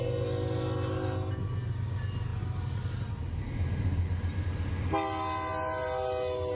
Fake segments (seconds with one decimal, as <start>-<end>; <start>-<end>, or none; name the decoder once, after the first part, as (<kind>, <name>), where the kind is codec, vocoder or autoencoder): none